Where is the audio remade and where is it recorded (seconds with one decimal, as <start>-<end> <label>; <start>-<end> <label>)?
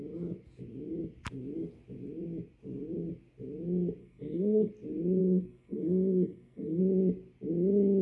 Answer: 0.0-4.0 recorded; 4.0-4.7 remade; 4.7-5.2 recorded; 5.2-6.8 remade; 6.8-8.0 recorded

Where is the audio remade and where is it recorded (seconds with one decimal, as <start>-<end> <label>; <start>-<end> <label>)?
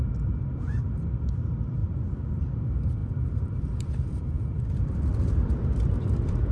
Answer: 0.0-6.5 remade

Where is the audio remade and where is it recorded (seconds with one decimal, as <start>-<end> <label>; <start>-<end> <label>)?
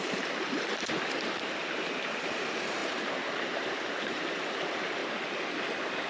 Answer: 0.0-5.0 remade; 5.0-6.1 recorded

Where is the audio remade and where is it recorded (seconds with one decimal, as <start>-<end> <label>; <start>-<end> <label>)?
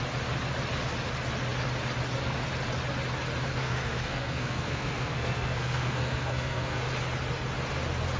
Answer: 0.0-3.5 recorded; 3.5-6.8 remade; 6.8-8.2 recorded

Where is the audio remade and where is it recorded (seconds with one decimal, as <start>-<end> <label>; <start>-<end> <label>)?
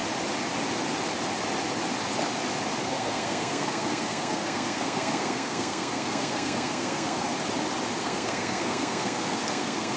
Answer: 0.0-2.8 recorded; 2.8-7.3 remade; 7.3-8.0 recorded; 8.0-10.0 remade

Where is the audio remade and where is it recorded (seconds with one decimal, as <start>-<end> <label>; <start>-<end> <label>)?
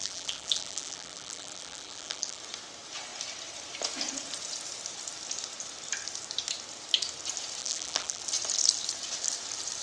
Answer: 0.0-2.4 remade; 2.4-7.6 recorded; 7.6-8.2 remade; 8.2-9.8 recorded